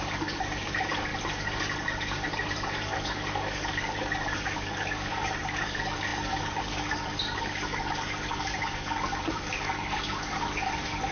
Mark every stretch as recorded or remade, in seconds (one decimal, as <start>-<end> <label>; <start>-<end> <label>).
0.0-1.1 remade; 1.1-2.7 recorded; 2.7-11.1 remade